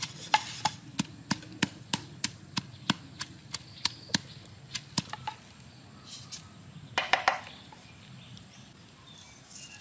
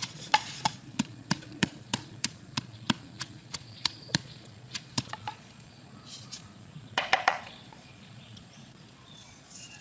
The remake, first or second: second